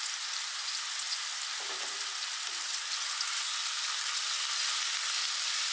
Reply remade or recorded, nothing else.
recorded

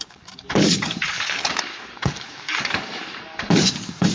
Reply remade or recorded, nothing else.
remade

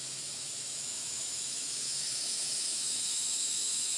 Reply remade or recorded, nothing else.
remade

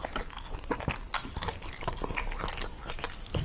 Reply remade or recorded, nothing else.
recorded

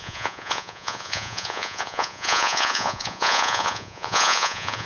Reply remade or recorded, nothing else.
remade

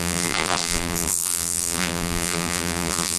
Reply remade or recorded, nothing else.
remade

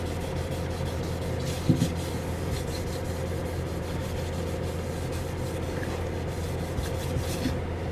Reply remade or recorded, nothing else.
recorded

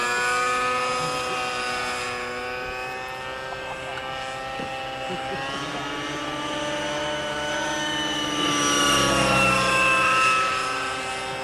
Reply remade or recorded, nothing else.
recorded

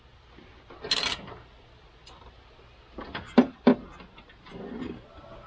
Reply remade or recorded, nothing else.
recorded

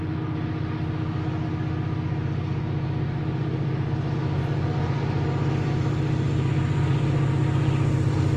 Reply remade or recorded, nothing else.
recorded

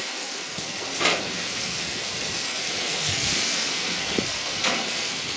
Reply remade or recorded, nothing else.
remade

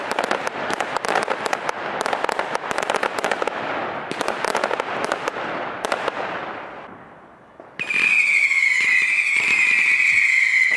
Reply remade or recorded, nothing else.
recorded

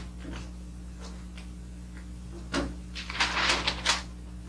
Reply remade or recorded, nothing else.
recorded